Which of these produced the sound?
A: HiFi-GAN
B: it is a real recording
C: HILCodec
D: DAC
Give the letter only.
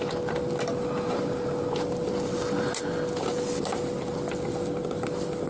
B